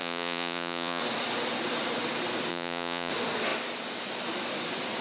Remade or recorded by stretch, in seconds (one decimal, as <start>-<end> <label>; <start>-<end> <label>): 0.0-1.0 remade; 1.0-2.5 recorded; 2.5-3.1 remade; 3.1-5.0 recorded